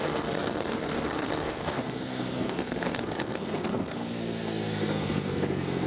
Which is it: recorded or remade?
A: remade